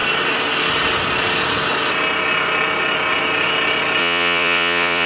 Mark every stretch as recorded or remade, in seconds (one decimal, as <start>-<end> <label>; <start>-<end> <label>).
0.0-4.0 recorded; 4.0-5.1 remade